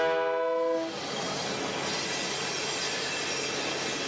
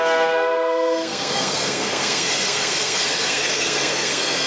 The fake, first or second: second